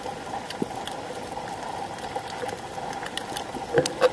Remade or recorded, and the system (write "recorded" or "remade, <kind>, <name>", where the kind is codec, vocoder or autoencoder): recorded